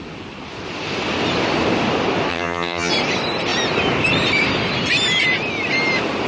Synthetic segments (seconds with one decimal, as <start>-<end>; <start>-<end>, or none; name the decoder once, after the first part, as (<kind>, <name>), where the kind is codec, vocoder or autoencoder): 2.3-2.9 (vocoder, HiFi-GAN)